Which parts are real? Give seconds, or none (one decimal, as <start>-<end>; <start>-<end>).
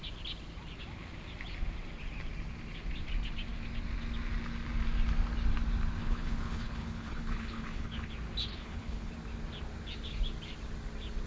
0.0-6.0; 8.1-8.5; 9.1-11.3